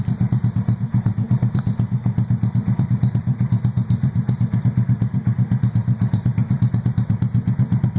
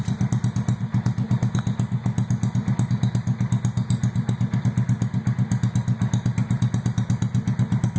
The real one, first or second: second